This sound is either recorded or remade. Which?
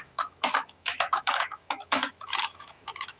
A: remade